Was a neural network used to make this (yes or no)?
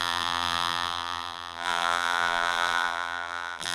yes